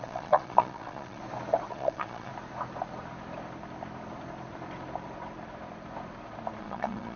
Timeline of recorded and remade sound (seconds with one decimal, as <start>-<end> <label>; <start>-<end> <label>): 0.0-1.2 remade; 1.2-1.7 recorded; 1.7-2.3 remade; 2.3-6.6 recorded; 6.6-7.2 remade